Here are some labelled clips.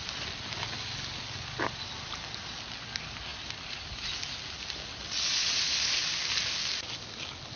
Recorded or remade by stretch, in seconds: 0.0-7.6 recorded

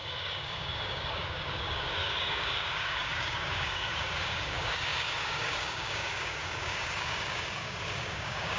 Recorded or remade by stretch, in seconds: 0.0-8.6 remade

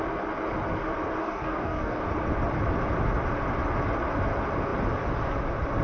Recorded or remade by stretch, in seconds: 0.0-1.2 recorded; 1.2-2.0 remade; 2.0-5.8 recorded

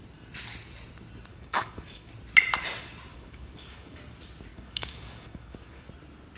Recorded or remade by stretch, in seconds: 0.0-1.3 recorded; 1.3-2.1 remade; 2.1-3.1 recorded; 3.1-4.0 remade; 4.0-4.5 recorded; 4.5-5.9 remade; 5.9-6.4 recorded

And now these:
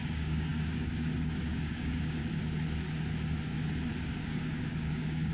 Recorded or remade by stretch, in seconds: 0.0-2.2 remade; 2.2-4.1 recorded; 4.1-5.3 remade

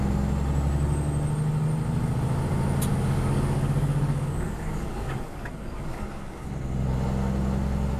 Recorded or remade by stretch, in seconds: 0.0-2.9 recorded; 2.9-6.5 remade; 6.5-8.0 recorded

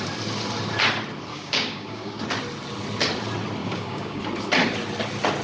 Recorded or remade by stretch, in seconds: 0.0-1.3 recorded; 1.3-2.2 remade; 2.2-3.6 recorded; 3.6-4.2 remade; 4.2-5.4 recorded

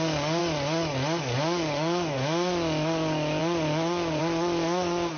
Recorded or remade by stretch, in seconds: 0.0-0.4 remade; 0.4-1.2 recorded; 1.2-5.2 remade